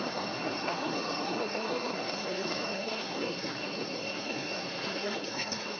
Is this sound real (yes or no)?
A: no